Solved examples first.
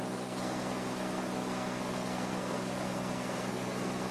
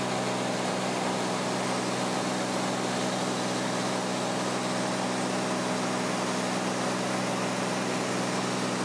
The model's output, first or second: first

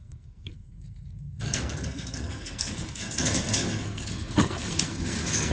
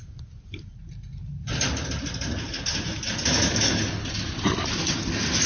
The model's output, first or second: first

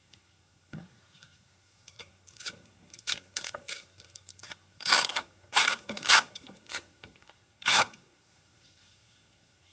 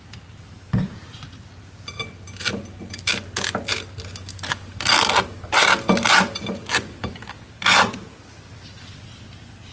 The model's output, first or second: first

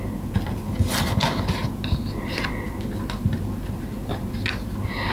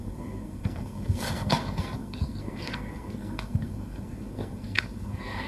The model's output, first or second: second